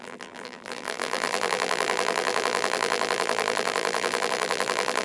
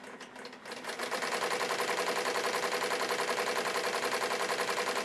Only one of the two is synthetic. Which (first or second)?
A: first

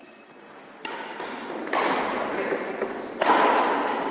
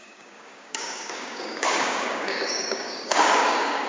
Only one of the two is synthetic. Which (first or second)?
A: second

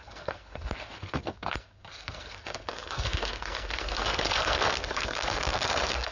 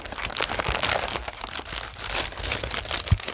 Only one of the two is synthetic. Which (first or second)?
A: first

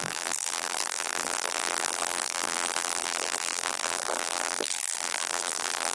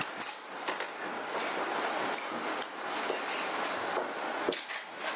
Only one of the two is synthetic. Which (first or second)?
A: first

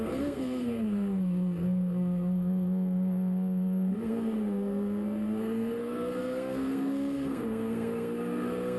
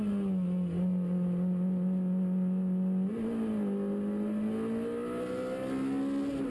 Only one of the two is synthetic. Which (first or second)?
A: first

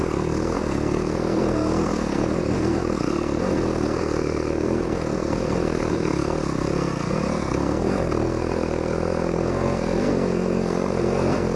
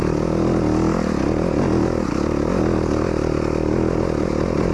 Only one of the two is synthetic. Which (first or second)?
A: first